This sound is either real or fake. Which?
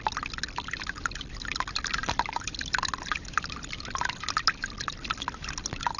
real